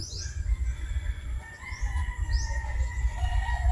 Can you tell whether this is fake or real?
fake